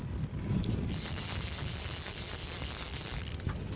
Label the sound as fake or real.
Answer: real